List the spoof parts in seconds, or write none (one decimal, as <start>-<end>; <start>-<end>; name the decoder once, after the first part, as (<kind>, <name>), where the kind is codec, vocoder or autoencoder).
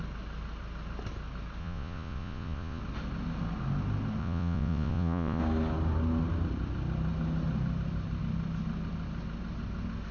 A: 1.6-2.8 (vocoder, Vocos); 4.2-5.4